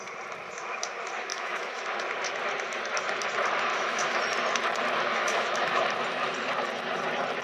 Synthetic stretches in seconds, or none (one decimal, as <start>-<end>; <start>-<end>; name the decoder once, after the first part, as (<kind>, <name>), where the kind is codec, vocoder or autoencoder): 1.3-1.8 (autoencoder, DAC-VAE); 3.7-4.2; 5.1-5.8